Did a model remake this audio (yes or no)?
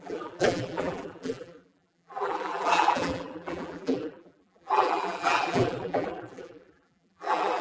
yes